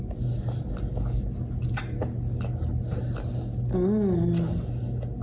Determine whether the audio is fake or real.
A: real